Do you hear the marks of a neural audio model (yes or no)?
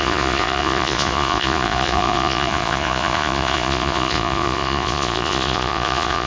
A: yes